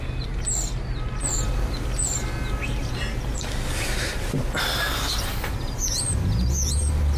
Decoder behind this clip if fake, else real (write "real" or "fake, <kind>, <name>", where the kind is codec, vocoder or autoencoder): real